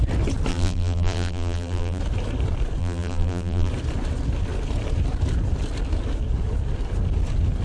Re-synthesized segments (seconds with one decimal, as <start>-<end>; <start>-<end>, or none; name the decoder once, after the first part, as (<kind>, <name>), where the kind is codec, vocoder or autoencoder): 0.5-2.0 (vocoder, BigVGAN v2); 2.8-3.7